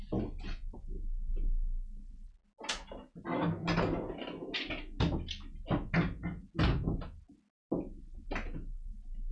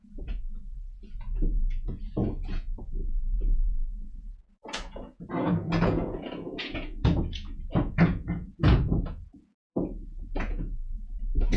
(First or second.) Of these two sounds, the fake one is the second